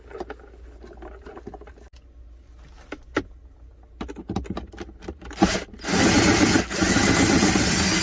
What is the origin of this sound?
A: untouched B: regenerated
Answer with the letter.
A